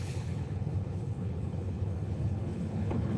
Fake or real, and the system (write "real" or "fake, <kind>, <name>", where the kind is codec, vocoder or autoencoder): fake, codec, HILCodec